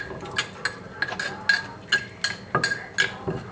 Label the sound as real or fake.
real